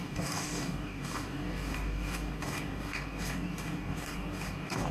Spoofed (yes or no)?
yes